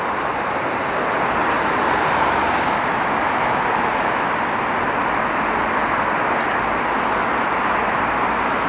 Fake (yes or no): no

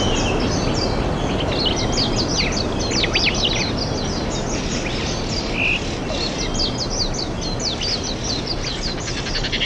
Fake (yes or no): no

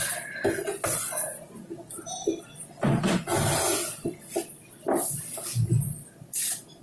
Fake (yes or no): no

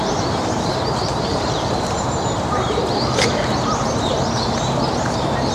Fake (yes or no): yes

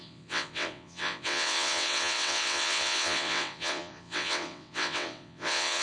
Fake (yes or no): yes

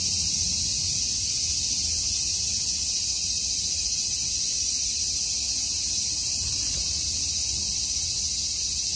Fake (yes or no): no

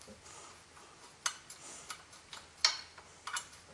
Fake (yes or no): no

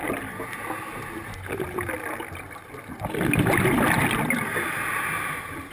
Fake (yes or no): no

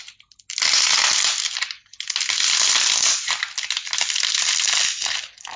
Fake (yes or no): no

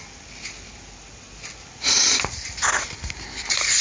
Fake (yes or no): no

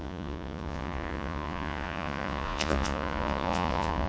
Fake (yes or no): yes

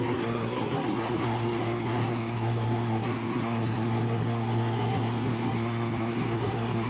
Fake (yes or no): yes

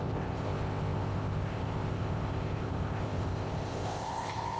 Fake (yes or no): yes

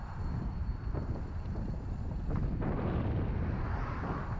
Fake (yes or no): no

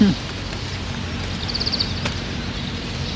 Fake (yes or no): no